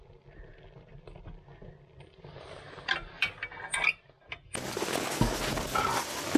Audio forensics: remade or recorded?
recorded